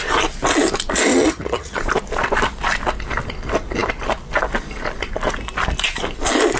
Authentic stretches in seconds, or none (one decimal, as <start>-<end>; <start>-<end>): 0.0-1.1; 1.8-6.6

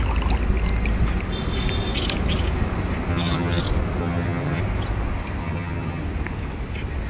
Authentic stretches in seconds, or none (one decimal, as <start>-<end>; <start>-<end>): 0.0-3.1; 3.6-4.0; 4.6-5.4; 6.0-7.1

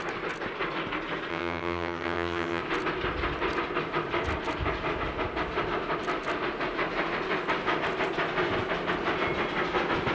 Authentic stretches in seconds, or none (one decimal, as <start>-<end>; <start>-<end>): 0.0-1.3; 2.6-10.1

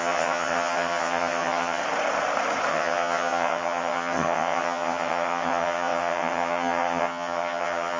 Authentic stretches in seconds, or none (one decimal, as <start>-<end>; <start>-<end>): 1.8-2.7

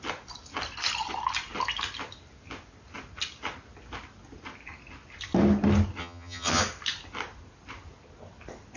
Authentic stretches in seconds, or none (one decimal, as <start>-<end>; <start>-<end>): 0.0-6.0; 6.6-8.8

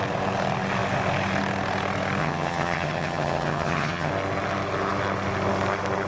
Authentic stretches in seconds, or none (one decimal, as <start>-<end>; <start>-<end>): 0.0-2.2; 4.1-6.1